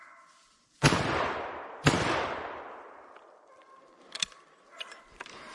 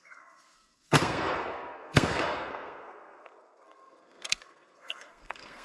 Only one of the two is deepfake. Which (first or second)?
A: second